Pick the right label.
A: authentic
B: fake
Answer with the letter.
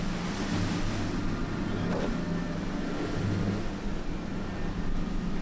A